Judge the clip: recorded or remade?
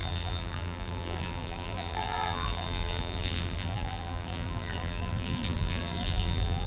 remade